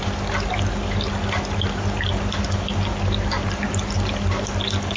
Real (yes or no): yes